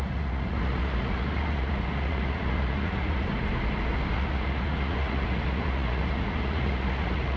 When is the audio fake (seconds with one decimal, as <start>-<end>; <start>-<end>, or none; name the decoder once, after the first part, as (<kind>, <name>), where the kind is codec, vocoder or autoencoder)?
0.0-3.3 (vocoder, Vocos); 4.1-7.4